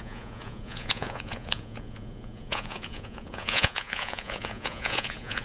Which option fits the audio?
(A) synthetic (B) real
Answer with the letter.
A